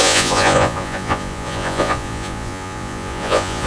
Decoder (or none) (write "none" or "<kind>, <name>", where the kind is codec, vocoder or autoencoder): vocoder, Vocos